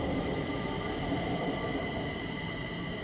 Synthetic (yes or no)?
no